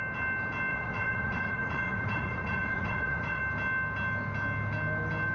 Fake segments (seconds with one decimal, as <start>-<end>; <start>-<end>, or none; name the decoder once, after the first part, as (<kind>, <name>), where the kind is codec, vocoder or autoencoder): 0.7-3.4 (vocoder, Vocos)